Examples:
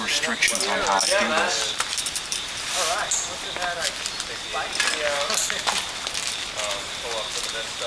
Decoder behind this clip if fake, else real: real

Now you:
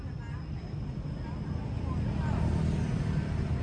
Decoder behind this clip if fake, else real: real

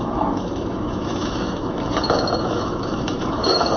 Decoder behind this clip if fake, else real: fake, autoencoder, DAC-VAE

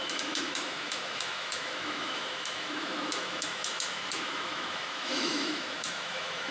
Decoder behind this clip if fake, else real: fake, autoencoder, DAC-VAE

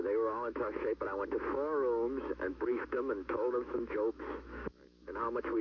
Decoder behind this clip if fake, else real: fake, autoencoder, DAC-VAE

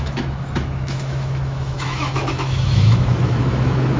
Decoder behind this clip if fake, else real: fake, autoencoder, DAC-VAE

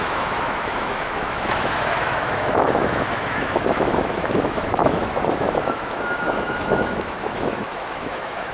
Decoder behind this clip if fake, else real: fake, autoencoder, DAC-VAE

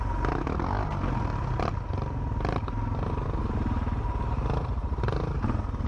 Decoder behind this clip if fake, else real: real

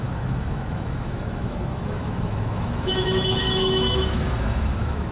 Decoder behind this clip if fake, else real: fake, autoencoder, DAC-VAE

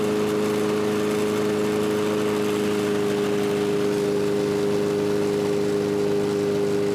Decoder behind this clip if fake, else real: real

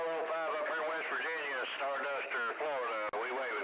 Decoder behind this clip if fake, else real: real